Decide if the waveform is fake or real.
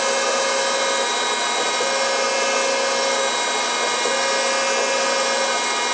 real